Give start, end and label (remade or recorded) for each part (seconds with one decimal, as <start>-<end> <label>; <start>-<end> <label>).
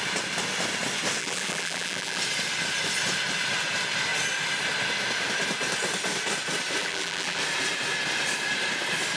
0.0-1.2 recorded; 1.2-2.2 remade; 2.2-6.8 recorded; 6.8-7.4 remade; 7.4-9.2 recorded